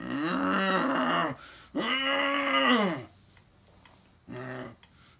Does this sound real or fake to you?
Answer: real